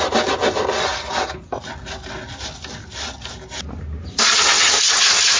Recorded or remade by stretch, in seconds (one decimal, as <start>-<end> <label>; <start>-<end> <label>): 0.0-5.4 recorded